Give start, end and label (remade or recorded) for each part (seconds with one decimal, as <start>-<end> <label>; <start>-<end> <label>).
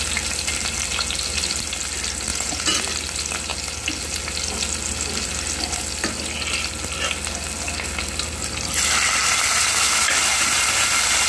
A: 0.0-2.3 recorded; 2.3-2.8 remade; 2.8-11.3 recorded